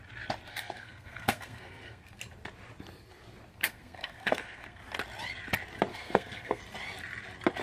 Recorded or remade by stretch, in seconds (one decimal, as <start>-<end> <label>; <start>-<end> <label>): 0.0-0.5 recorded; 0.5-2.2 remade; 2.2-3.5 recorded; 3.5-4.8 remade; 4.8-5.9 recorded; 5.9-6.6 remade; 6.6-7.6 recorded